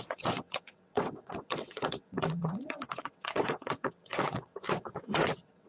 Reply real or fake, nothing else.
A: fake